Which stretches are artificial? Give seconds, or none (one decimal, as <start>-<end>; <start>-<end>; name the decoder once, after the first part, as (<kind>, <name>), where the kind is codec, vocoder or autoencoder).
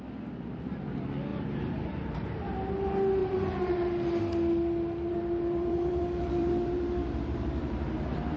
1.3-2.7 (vocoder, BigVGAN v2); 3.2-4.2; 5.1-8.4